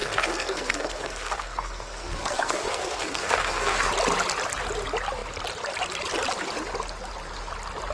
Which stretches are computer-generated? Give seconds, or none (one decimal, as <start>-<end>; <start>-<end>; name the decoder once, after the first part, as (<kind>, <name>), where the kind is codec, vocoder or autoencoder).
0.0-3.9 (codec, SNAC)